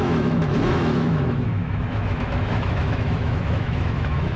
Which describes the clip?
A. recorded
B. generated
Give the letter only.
B